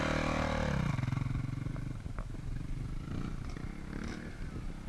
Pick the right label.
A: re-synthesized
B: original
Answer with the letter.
B